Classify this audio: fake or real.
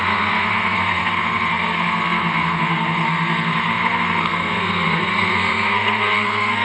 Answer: fake